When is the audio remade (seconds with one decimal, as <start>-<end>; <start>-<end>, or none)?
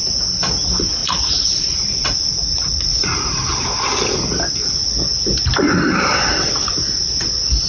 1.0-3.4